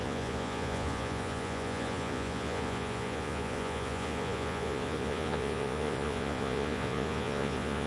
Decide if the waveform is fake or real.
fake